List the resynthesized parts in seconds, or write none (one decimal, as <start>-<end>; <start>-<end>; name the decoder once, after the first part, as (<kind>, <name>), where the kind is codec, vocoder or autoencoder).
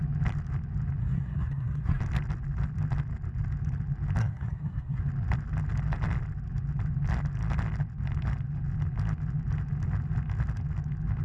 1.0-2.0 (codec, SNAC); 4.2-5.0